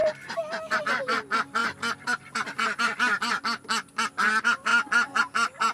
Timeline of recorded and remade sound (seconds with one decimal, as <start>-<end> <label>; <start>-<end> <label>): 0.0-5.7 recorded